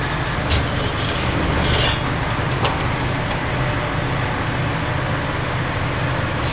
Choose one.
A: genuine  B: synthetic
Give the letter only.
A